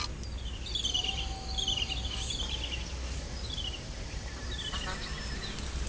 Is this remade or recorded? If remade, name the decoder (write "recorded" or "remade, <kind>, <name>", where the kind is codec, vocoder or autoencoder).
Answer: recorded